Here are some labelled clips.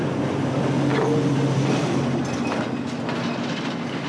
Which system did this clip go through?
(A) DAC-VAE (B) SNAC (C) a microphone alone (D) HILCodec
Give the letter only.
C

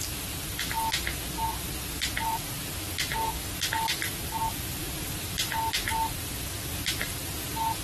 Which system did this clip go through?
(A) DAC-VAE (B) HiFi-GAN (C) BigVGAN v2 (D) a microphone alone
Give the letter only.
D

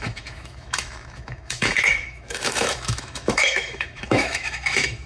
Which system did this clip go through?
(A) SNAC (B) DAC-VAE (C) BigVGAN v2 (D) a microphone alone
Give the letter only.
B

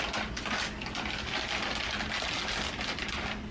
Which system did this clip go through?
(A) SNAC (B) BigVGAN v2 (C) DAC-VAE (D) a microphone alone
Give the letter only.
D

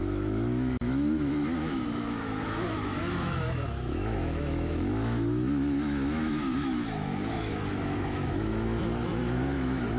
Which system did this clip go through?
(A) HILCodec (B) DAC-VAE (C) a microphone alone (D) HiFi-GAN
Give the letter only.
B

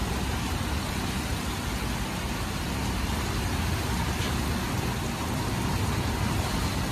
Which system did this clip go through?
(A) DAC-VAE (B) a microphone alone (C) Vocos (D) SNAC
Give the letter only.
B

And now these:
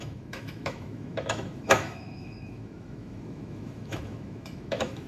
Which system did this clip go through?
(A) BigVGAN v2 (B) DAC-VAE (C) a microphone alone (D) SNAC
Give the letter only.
B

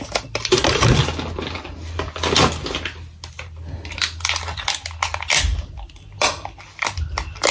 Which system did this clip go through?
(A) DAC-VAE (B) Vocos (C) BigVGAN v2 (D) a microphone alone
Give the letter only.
D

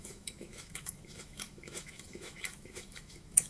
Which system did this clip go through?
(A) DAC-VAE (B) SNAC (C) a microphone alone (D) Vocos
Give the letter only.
A